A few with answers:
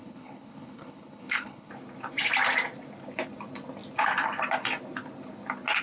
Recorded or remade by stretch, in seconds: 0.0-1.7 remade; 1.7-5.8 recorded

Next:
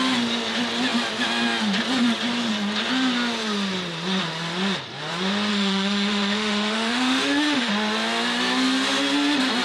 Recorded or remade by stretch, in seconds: 0.0-5.5 recorded; 5.5-7.7 remade; 7.7-9.6 recorded

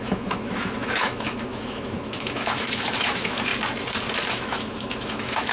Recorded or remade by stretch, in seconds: 0.0-3.5 remade; 3.5-4.3 recorded; 4.3-5.5 remade